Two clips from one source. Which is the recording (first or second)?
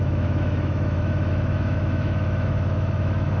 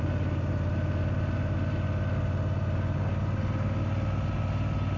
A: second